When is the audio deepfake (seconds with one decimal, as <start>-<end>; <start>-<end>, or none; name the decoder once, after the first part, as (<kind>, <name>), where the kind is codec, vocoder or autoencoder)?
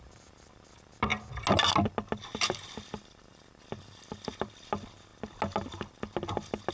none